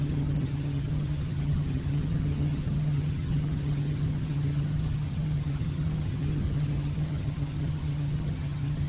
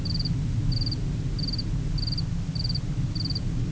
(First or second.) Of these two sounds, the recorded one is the second